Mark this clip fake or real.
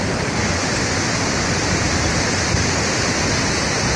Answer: real